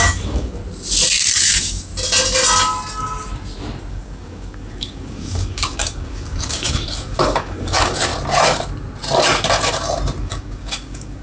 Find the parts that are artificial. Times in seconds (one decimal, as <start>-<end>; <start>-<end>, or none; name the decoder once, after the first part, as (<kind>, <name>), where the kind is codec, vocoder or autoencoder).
0.0-0.6 (codec, DAC); 1.4-1.9; 3.9-8.1; 10.2-11.2